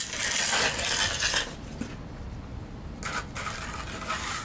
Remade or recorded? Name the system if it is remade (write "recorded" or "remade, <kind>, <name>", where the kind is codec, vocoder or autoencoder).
recorded